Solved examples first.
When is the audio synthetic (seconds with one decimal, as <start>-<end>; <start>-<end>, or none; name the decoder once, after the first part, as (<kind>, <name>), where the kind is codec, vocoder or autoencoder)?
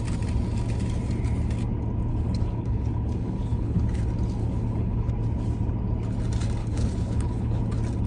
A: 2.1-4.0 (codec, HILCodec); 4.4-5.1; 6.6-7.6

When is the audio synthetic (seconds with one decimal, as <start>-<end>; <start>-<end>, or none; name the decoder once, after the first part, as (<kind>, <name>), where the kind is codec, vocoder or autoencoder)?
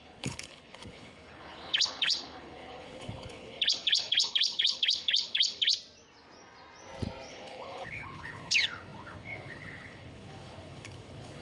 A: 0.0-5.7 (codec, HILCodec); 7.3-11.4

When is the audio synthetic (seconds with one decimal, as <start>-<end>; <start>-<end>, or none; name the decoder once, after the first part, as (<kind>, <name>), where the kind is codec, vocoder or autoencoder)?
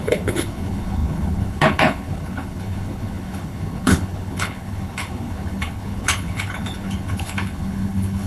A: 0.0-8.3 (codec, HILCodec)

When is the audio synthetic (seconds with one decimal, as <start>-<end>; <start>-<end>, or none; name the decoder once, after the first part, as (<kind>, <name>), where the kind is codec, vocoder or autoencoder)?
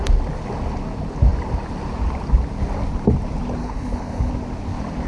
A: 3.6-4.3 (codec, HILCodec)